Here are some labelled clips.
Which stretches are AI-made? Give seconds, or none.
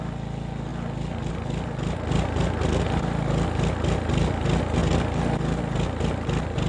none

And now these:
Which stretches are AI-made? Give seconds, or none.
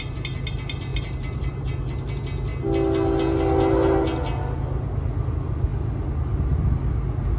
0.9-1.8 (vocoder, BigVGAN v2)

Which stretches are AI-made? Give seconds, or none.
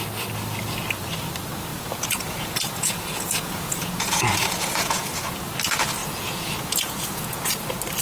1.7-5.2 (vocoder, Vocos); 6.0-7.5